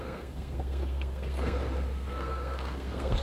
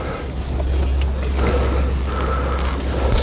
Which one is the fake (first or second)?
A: first